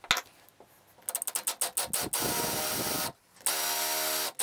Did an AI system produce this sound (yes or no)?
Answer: no